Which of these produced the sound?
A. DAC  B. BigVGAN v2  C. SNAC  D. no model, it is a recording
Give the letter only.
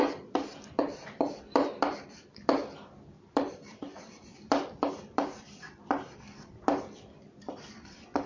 B